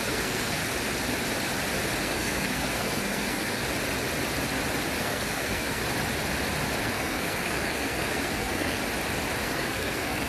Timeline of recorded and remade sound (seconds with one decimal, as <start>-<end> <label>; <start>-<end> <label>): 0.0-0.6 remade; 0.6-2.0 recorded; 2.0-3.6 remade; 3.6-5.0 recorded; 5.0-5.8 remade; 5.8-6.8 recorded; 6.8-8.8 remade; 8.8-9.4 recorded; 9.4-10.3 remade